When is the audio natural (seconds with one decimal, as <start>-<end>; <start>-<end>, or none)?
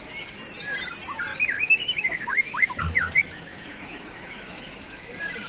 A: 0.0-1.3; 2.8-3.5; 5.1-5.5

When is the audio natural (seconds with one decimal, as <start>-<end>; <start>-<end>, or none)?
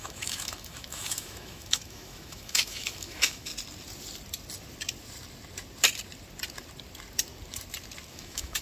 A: 3.5-8.1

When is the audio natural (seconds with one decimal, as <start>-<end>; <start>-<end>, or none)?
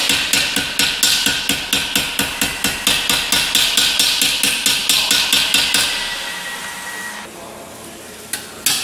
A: 0.0-8.8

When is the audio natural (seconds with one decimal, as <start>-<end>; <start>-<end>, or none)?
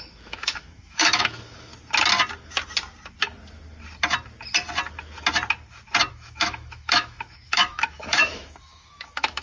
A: 1.7-6.1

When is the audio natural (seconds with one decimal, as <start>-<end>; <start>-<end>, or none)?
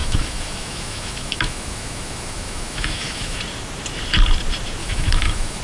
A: 3.4-4.8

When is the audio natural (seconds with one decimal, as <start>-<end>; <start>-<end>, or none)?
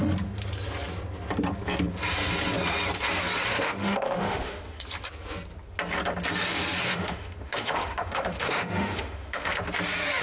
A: 0.0-3.5; 4.8-6.8; 9.6-10.2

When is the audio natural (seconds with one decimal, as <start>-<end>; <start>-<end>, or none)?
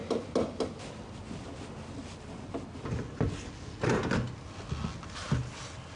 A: 0.0-6.0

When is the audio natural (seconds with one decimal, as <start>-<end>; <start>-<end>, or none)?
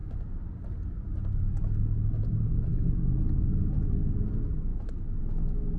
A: 0.0-5.8